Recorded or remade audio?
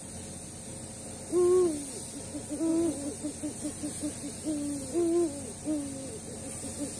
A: recorded